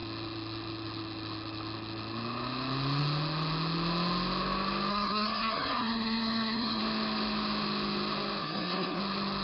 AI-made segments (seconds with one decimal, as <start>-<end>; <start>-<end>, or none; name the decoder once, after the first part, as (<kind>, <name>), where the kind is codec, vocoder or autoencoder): 4.9-6.8 (codec, SNAC); 8.4-9.0